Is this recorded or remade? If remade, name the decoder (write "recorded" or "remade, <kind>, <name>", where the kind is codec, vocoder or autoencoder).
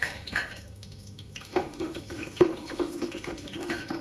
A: remade, autoencoder, DAC-VAE